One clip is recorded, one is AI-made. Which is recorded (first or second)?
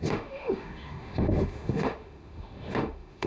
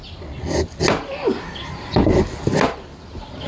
second